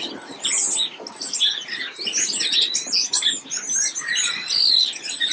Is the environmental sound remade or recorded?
recorded